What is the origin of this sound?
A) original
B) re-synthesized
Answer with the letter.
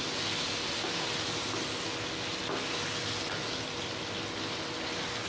A